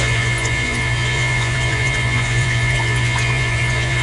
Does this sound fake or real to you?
fake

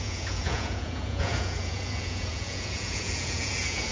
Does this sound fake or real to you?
fake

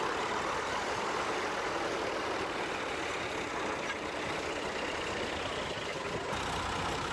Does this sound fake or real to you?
real